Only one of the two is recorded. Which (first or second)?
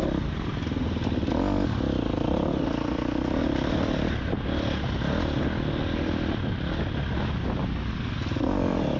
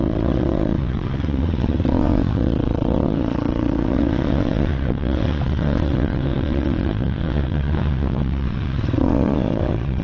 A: first